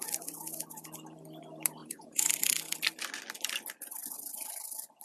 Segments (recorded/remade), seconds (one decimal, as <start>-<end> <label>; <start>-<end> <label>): 0.0-1.8 recorded; 1.8-2.3 remade; 2.3-5.0 recorded